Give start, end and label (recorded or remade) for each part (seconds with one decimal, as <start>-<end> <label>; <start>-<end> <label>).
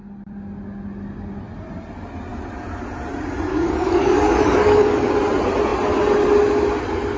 0.0-3.5 recorded; 3.5-5.1 remade; 5.1-7.2 recorded